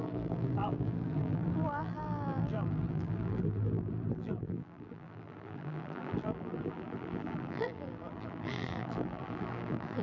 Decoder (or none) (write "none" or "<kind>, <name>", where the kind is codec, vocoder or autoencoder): vocoder, BigVGAN v2